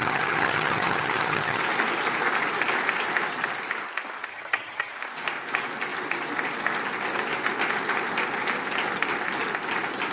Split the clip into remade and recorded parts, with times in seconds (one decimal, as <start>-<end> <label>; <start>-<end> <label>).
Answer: 0.0-1.6 remade; 1.6-4.3 recorded; 4.3-4.9 remade; 4.9-10.1 recorded